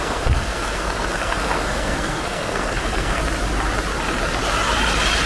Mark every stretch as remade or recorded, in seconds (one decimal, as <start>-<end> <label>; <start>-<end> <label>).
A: 0.0-3.2 remade; 3.2-5.3 recorded